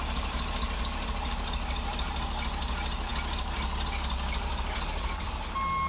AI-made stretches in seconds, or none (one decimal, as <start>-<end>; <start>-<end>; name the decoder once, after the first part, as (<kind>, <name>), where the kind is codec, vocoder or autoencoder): none

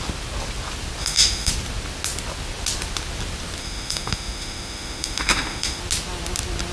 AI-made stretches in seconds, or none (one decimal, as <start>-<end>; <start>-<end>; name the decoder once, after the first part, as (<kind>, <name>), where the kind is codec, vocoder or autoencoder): 1.0-1.5 (autoencoder, DAC-VAE); 3.6-5.8

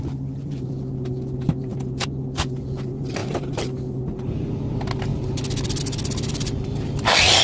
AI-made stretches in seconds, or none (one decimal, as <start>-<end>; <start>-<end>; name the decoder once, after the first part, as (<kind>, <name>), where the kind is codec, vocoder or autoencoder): none

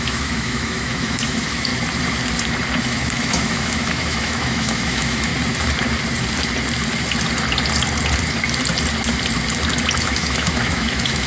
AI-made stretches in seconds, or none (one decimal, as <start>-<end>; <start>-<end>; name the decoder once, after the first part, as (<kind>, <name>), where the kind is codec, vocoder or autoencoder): 0.0-1.7 (autoencoder, DAC-VAE); 2.8-5.3; 10.0-11.3